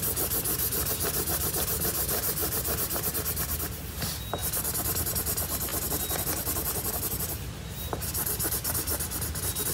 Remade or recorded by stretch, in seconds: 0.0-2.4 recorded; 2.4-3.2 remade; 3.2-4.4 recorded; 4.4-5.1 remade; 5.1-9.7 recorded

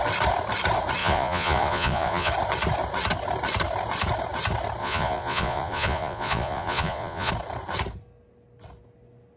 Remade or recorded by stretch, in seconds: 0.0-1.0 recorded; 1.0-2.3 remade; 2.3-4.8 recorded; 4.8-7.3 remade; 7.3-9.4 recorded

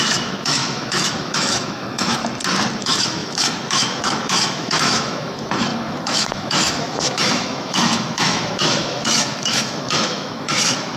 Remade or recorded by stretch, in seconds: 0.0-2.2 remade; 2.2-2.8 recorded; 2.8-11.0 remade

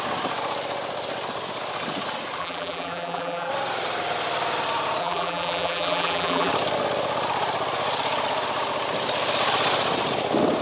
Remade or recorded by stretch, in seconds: 0.0-2.4 recorded; 2.4-3.5 remade; 3.5-5.0 recorded; 5.0-6.5 remade; 6.5-10.6 recorded

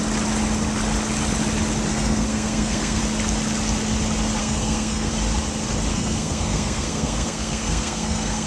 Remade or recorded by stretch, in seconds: 0.0-1.9 recorded; 1.9-3.0 remade; 3.0-4.4 recorded; 4.4-5.1 remade; 5.1-5.9 recorded; 5.9-8.5 remade